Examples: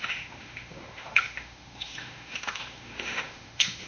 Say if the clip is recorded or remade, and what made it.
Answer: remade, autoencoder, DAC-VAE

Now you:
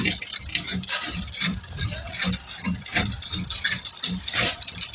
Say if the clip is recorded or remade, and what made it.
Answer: remade, vocoder, BigVGAN v2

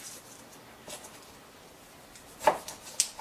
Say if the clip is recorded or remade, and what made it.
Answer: recorded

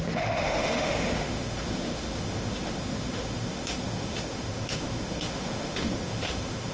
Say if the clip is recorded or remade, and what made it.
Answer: remade, autoencoder, DAC-VAE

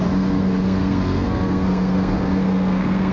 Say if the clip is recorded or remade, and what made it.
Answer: remade, codec, SNAC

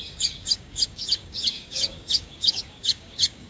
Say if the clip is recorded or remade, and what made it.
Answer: remade, codec, DAC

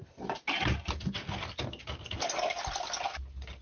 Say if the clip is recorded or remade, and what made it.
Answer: recorded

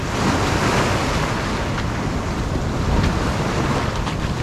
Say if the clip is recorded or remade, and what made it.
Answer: recorded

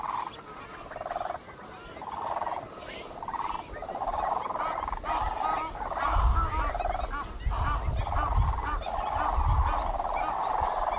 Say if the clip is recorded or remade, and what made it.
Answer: recorded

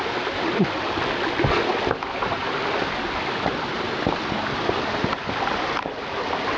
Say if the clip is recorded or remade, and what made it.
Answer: recorded